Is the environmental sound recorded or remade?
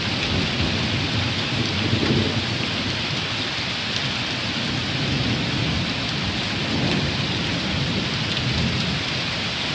recorded